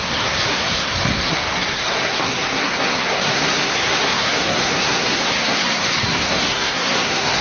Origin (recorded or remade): remade